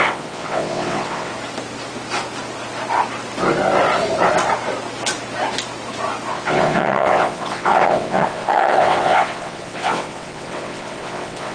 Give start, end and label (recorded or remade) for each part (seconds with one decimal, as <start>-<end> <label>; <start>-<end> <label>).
0.0-1.3 remade; 1.3-6.3 recorded; 6.3-11.5 remade